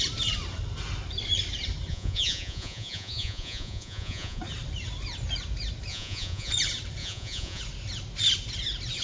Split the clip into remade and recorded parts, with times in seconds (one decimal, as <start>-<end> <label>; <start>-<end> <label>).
0.0-1.9 recorded; 1.9-4.4 remade; 4.4-5.9 recorded; 5.9-6.5 remade; 6.5-7.0 recorded; 7.0-7.6 remade; 7.6-9.0 recorded